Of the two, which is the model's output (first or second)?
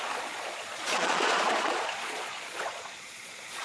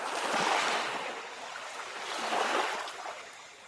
first